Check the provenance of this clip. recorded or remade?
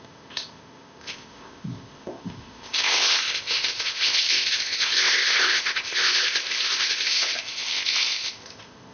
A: remade